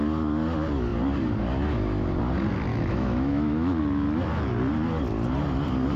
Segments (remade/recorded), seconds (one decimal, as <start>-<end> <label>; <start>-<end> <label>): 0.0-2.7 recorded; 2.7-3.8 remade; 3.8-6.0 recorded